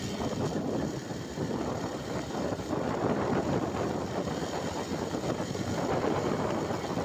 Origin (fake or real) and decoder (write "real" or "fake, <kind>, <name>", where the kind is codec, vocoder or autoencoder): fake, vocoder, BigVGAN v2